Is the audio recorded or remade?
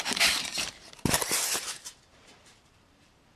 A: remade